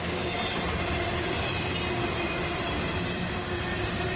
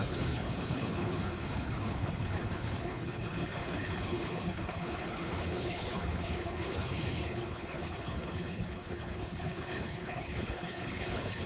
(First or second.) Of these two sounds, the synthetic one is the second